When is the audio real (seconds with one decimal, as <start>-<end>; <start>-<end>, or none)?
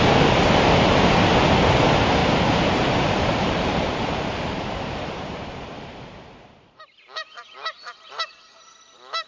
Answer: 0.0-2.2; 6.8-9.3